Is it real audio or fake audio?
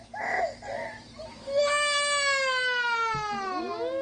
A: real